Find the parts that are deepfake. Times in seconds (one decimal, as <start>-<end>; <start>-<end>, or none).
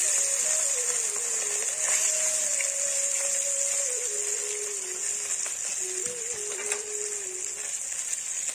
none